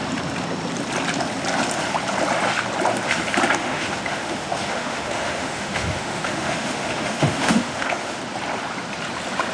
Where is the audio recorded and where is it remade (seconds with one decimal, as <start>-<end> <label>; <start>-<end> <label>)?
0.0-3.6 recorded; 3.6-8.2 remade; 8.2-9.5 recorded